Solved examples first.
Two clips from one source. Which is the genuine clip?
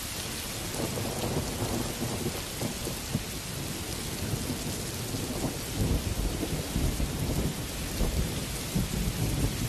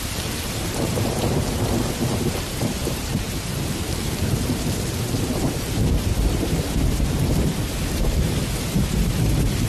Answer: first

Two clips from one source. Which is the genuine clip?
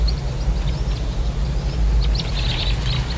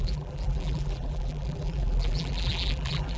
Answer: first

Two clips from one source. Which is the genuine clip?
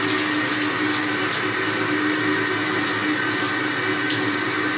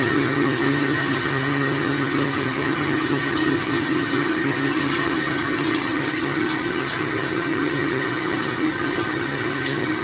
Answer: first